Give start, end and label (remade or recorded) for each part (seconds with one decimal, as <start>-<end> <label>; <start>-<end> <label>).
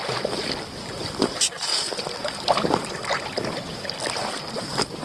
0.0-5.0 recorded